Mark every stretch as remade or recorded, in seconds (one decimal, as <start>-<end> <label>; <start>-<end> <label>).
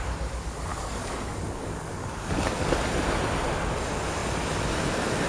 0.0-0.7 recorded; 0.7-2.7 remade; 2.7-5.3 recorded